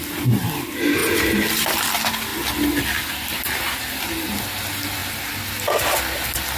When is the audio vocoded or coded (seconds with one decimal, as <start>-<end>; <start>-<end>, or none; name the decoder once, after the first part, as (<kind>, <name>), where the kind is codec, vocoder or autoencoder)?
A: none